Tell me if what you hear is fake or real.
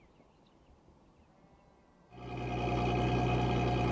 real